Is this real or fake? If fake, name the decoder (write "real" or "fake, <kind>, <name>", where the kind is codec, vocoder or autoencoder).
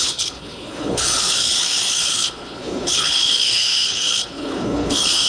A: fake, codec, HILCodec